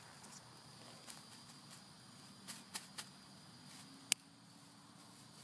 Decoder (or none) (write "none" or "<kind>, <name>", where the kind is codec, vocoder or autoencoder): none